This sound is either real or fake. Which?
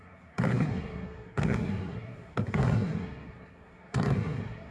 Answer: fake